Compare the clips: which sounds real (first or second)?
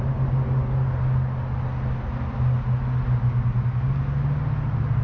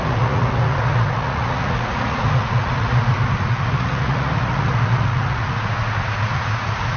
first